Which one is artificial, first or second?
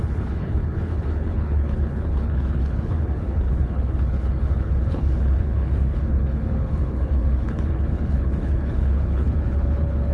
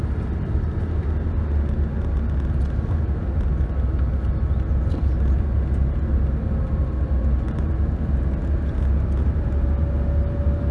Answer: first